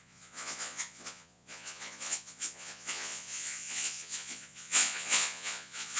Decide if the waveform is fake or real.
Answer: fake